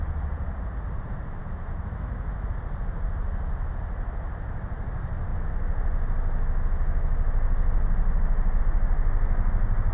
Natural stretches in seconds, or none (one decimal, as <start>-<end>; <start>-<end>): 0.0-1.4; 2.5-9.9

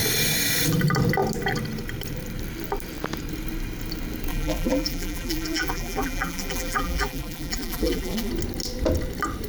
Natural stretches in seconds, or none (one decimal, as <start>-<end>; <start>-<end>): 0.0-4.3; 8.3-9.5

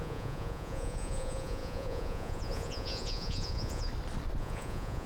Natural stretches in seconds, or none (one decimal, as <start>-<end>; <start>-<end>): 3.9-4.4

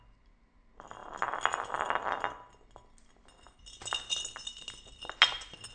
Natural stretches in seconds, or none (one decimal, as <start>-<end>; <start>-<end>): 0.0-5.7

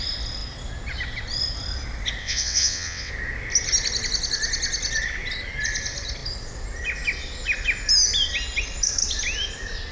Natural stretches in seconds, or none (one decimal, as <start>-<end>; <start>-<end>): 0.0-2.2; 3.1-9.9